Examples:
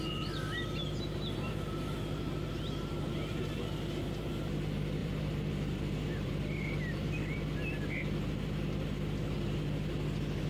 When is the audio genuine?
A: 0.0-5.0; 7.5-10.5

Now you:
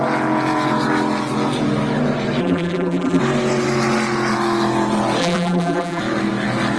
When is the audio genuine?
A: 0.0-2.4; 3.2-5.2; 6.0-6.8